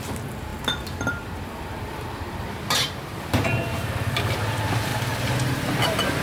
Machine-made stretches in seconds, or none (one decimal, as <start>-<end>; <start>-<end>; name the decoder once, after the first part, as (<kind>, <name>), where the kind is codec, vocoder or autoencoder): 0.0-4.9 (vocoder, BigVGAN v2); 5.8-6.2

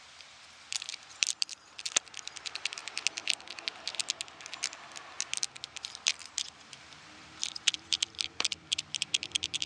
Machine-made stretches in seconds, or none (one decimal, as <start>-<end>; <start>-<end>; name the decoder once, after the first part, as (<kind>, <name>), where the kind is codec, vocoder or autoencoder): 0.0-2.8 (vocoder, BigVGAN v2); 5.8-6.2; 7.0-9.7

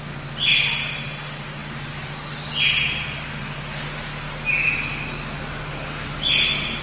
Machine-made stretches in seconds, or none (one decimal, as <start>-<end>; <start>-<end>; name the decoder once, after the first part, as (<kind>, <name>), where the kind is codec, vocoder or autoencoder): none

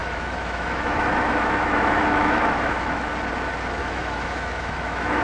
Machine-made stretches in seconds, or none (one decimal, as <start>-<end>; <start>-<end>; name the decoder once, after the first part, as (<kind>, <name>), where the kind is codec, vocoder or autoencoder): 0.0-3.1 (autoencoder, DAC-VAE); 3.8-5.2

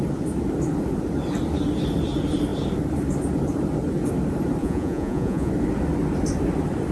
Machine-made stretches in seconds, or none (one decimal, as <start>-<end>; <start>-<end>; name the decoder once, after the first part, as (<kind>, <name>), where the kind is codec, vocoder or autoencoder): 4.6-5.5 (vocoder, Vocos)